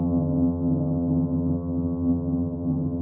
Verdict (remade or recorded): remade